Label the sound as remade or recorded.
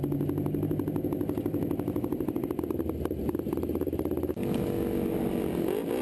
recorded